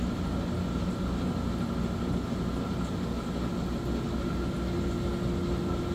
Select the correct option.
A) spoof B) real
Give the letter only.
B